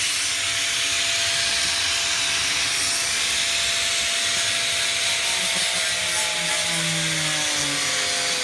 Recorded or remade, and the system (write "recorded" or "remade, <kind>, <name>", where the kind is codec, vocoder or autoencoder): recorded